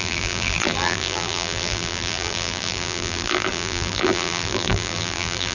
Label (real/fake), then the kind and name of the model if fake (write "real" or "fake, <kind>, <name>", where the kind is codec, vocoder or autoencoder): fake, vocoder, BigVGAN v2